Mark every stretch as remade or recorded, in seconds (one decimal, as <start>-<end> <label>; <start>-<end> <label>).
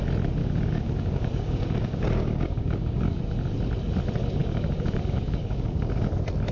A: 0.0-0.4 recorded; 0.4-3.2 remade; 3.2-4.4 recorded; 4.4-6.1 remade; 6.1-6.5 recorded